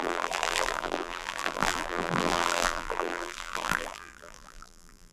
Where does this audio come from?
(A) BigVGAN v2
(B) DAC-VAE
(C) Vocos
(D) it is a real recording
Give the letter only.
A